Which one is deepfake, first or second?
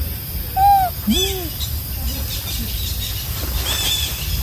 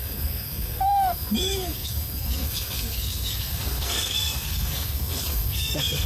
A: second